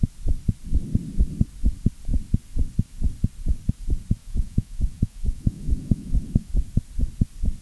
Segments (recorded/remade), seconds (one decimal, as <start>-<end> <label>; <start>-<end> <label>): 0.0-4.2 recorded; 4.2-6.5 remade; 6.5-7.6 recorded